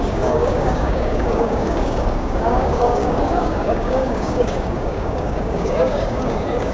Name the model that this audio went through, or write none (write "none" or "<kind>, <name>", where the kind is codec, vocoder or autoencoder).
codec, DAC